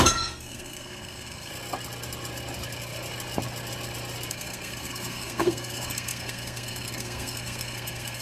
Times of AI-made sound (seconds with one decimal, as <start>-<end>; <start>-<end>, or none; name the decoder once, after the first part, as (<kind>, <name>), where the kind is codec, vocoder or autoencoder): 0.0-1.5 (codec, SNAC); 4.3-8.2